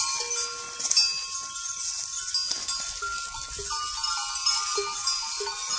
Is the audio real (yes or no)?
yes